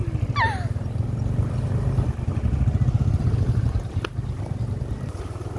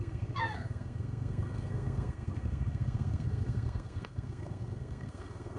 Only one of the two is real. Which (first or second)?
first